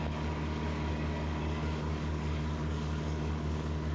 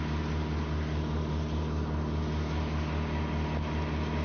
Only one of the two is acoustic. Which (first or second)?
second